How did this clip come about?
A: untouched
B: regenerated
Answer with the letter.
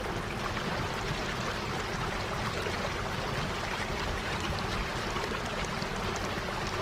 A